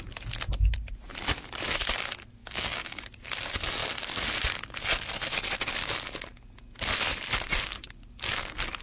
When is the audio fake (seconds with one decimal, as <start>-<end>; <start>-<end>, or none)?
2.4-3.0